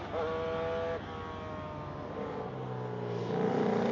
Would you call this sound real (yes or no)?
yes